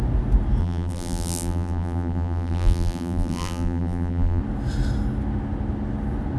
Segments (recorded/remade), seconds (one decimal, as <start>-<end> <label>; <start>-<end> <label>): 0.0-0.6 recorded; 0.6-4.4 remade; 4.4-6.4 recorded